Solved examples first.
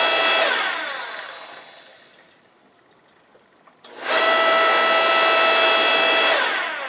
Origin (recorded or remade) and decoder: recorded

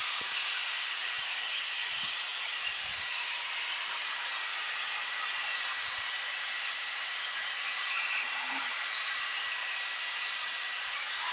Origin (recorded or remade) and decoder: remade, vocoder, BigVGAN v2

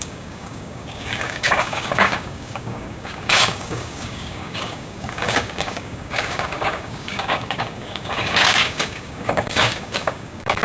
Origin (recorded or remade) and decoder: remade, codec, DAC